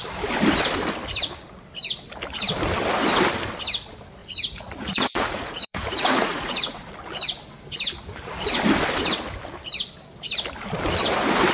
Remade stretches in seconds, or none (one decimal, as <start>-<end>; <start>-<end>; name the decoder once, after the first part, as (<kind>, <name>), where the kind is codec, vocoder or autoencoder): 4.2-6.9 (vocoder, Vocos)